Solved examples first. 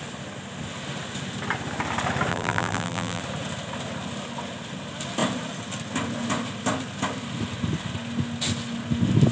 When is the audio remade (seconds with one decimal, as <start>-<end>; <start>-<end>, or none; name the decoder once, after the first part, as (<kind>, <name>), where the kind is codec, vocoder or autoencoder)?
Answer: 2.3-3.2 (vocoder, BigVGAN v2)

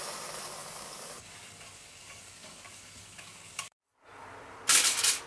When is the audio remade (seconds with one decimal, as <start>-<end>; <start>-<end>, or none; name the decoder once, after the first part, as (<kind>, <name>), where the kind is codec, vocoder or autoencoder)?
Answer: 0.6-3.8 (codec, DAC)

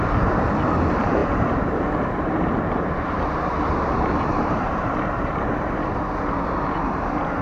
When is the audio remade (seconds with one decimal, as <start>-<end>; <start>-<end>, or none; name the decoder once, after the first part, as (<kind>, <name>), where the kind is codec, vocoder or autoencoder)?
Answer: 1.2-5.5 (vocoder, BigVGAN v2)

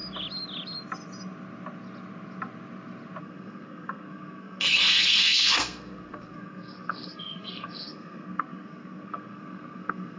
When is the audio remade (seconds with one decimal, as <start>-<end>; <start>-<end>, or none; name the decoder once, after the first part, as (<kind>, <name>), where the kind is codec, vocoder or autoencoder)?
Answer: 3.2-10.2 (codec, SNAC)

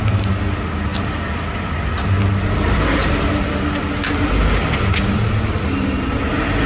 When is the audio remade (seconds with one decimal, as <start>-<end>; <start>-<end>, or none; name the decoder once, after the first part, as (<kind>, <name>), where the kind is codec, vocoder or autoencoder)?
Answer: 0.9-4.3 (vocoder, BigVGAN v2)

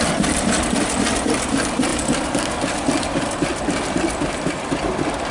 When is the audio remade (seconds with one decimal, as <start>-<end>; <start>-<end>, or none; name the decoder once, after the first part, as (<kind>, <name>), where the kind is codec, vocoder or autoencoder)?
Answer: 0.0-1.9 (vocoder, BigVGAN v2); 4.3-5.3

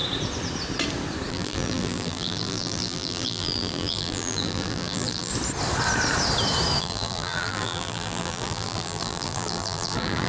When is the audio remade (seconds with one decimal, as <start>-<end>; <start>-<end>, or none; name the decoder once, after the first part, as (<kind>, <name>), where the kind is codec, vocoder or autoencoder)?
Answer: 1.3-5.3 (vocoder, BigVGAN v2); 6.8-10.3

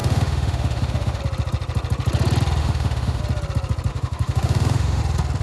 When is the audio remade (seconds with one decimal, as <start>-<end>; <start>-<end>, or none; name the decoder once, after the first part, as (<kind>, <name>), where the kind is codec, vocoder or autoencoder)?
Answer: 0.0-1.2 (autoencoder, DAC-VAE); 2.6-3.2; 3.9-5.0